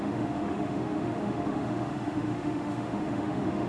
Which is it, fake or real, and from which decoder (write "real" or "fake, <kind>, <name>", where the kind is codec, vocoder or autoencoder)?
fake, autoencoder, DAC-VAE